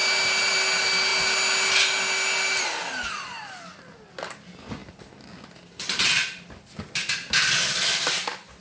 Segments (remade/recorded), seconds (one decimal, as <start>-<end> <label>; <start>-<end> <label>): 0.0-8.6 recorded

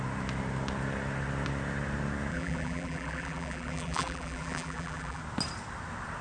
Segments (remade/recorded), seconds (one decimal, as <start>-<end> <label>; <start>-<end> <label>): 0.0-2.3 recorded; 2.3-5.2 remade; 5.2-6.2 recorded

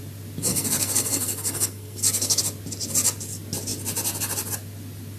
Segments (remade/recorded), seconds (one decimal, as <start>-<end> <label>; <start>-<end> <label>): 0.0-0.5 recorded; 0.5-2.4 remade; 2.4-5.2 recorded

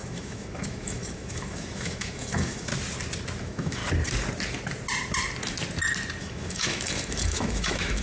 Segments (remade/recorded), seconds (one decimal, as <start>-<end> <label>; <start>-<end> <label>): 0.0-2.7 remade; 2.7-3.4 recorded; 3.4-3.8 remade; 3.8-6.2 recorded; 6.2-8.0 remade

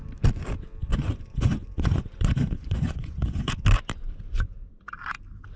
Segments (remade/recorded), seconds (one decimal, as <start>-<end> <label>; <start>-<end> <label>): 0.0-0.9 recorded; 0.9-3.5 remade; 3.5-5.6 recorded

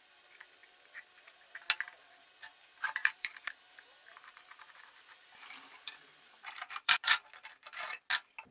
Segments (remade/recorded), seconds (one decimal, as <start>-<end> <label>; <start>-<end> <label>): 0.0-3.0 recorded; 3.0-8.0 remade; 8.0-8.5 recorded

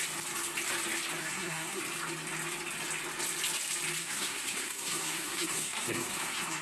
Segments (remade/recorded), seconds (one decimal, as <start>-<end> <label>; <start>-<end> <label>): 0.0-1.2 recorded; 1.2-1.8 remade; 1.8-4.0 recorded; 4.0-6.6 remade